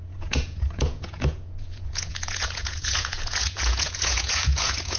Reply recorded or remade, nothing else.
remade